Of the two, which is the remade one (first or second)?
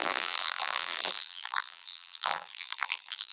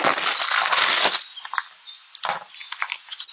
first